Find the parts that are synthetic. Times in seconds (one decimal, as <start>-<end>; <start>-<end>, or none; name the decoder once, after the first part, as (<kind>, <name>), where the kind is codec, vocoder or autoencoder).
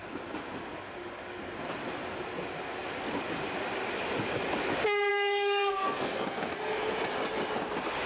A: 5.1-6.9 (codec, SNAC)